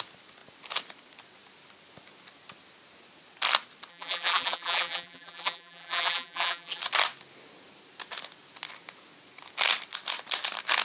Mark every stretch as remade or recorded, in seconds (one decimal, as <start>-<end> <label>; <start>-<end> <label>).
0.0-3.9 recorded; 3.9-6.8 remade; 6.8-10.8 recorded